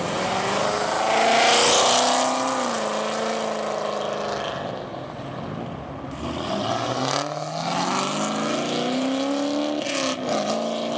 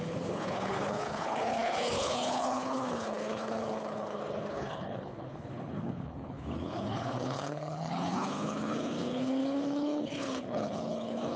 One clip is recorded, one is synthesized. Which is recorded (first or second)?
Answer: first